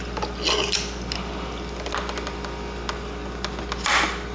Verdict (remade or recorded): recorded